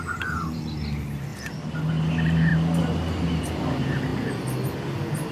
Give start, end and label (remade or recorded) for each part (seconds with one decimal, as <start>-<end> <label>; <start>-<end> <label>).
0.0-2.5 recorded; 2.5-3.5 remade; 3.5-5.3 recorded